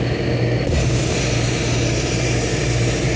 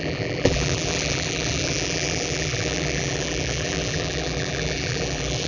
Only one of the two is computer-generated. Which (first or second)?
second